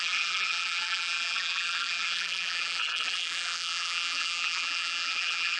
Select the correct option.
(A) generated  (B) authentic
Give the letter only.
A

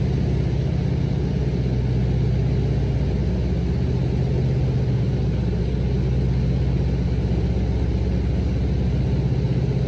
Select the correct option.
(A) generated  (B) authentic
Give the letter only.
B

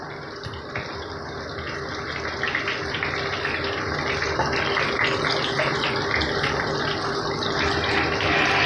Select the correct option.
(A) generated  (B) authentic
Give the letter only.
B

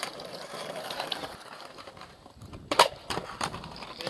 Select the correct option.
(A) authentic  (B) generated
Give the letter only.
B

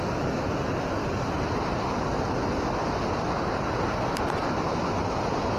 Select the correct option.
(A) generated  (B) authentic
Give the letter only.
B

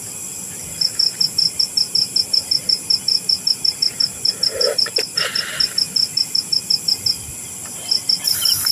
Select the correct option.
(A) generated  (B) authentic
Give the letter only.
B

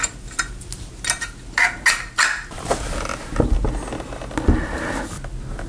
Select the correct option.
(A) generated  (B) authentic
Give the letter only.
B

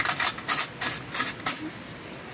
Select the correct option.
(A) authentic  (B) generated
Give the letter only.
A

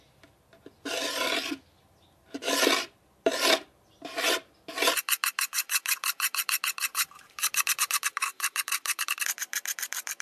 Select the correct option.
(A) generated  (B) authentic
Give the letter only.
A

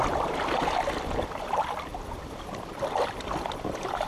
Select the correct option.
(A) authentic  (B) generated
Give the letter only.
B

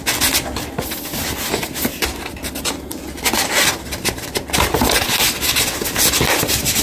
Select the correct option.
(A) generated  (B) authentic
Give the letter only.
B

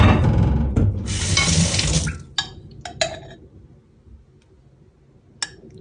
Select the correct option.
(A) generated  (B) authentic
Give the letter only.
B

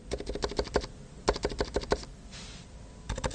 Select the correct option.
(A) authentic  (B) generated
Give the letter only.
A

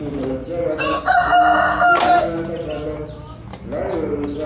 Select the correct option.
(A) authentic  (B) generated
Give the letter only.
A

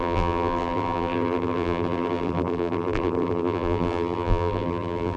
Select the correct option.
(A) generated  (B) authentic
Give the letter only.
A